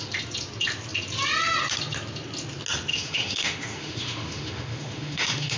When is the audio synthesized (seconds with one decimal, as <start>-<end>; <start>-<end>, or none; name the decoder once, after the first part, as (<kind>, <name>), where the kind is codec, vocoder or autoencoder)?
2.9-5.6 (autoencoder, DAC-VAE)